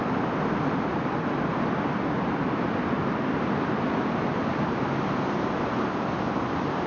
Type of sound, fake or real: real